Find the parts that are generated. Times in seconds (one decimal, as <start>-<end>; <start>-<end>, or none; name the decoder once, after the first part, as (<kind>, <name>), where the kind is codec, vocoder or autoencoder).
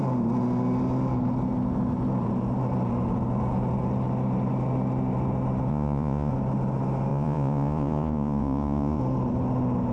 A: 5.7-6.3 (vocoder, Vocos); 7.1-9.0